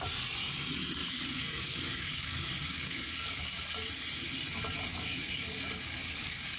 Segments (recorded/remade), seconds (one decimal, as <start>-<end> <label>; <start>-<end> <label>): 0.0-1.0 recorded; 1.0-3.9 remade; 3.9-4.9 recorded; 4.9-6.6 remade